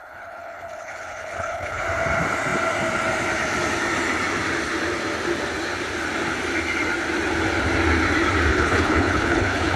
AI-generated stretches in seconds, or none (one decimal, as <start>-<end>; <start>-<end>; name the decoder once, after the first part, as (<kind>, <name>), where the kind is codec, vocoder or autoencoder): 0.0-1.8 (codec, HILCodec); 8.5-9.8